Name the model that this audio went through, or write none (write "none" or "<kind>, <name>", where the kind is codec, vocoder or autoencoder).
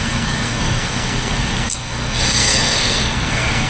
codec, SNAC